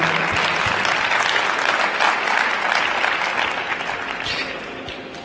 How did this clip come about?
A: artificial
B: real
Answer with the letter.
B